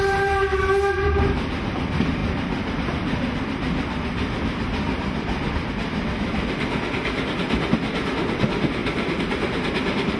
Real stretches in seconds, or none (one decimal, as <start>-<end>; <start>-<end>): 0.0-10.2

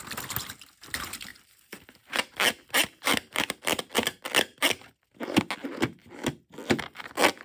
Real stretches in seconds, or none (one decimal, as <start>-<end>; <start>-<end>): 0.0-1.3; 5.5-7.4

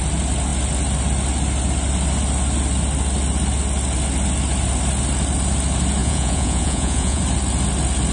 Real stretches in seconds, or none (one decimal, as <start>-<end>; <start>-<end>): 0.0-6.0; 7.2-8.1